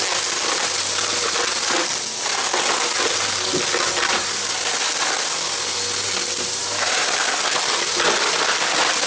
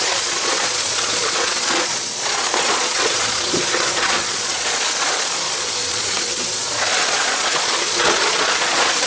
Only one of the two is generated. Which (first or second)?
second